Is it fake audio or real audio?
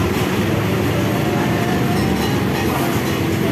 real